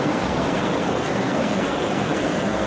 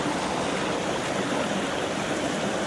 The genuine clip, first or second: second